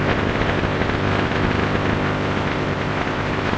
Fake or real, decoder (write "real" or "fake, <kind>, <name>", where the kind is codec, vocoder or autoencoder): fake, codec, ZipCodec